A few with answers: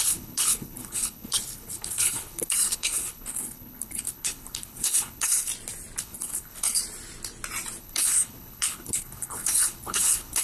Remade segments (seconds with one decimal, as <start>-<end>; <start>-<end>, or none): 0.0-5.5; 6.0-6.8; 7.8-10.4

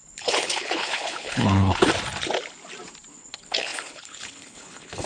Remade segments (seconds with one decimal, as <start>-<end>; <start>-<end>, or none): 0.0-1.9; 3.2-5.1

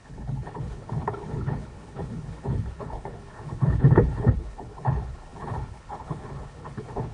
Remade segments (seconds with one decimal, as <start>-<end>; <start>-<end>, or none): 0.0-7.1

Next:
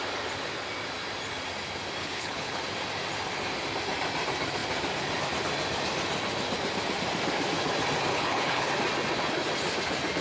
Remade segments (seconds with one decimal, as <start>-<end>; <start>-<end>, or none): 2.0-2.6; 8.1-8.7